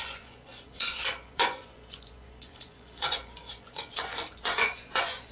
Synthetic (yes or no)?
yes